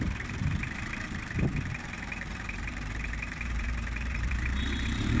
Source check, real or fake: fake